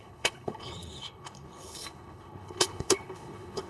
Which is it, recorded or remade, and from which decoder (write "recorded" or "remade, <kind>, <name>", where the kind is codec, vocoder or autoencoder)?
remade, codec, HILCodec